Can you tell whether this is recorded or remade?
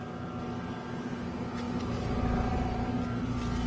recorded